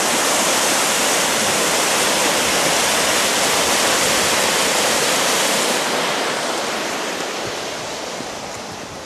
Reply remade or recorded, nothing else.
recorded